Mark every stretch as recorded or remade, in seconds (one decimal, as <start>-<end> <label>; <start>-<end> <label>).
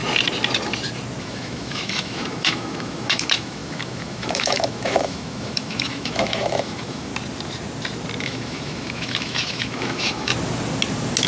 0.0-1.2 recorded; 1.2-7.1 remade; 7.1-8.2 recorded; 8.2-10.3 remade; 10.3-11.3 recorded